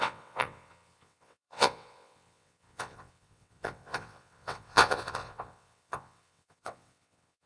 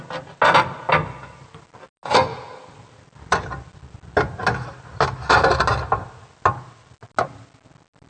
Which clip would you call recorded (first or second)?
second